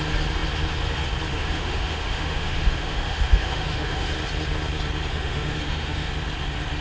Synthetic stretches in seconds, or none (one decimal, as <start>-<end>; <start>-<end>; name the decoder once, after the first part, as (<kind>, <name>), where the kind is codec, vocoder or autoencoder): 1.3-4.1 (autoencoder, DAC-VAE); 5.1-6.1